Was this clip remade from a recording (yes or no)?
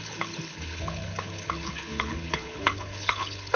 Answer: yes